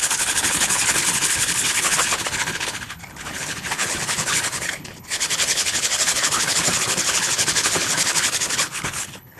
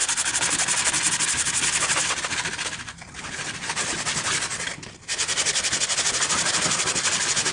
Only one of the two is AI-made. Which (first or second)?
first